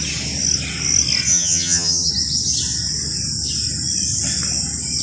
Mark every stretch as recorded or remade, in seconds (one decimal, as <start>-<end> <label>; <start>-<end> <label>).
0.0-1.3 recorded; 1.3-2.1 remade; 2.1-5.0 recorded